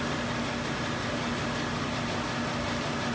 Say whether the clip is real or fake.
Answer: real